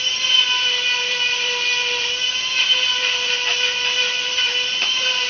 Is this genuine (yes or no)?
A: no